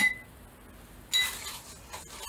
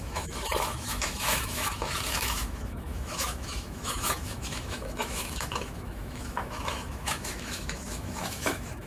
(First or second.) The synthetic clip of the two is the second